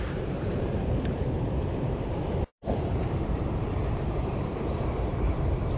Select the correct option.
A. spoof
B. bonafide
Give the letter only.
A